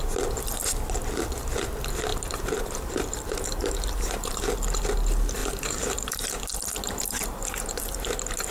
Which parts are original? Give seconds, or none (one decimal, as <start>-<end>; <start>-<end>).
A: 0.0-2.1; 4.4-5.4; 6.4-7.0; 7.9-8.5